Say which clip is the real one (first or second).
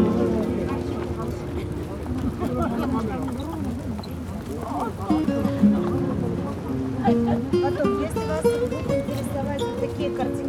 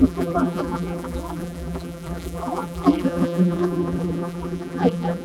first